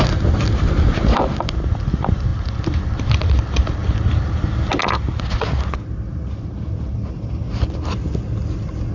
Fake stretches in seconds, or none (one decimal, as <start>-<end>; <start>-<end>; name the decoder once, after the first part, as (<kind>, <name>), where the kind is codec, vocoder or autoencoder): 6.1-7.2 (vocoder, BigVGAN v2)